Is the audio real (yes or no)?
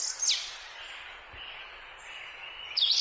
yes